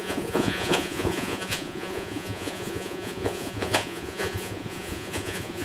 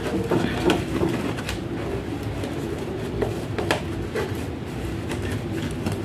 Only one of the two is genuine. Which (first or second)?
second